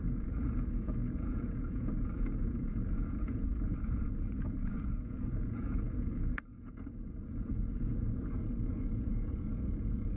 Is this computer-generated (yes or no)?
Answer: yes